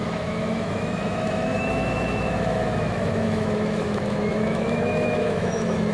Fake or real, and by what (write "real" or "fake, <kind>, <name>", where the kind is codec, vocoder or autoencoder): fake, autoencoder, DAC-VAE